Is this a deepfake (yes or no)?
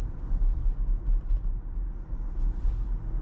no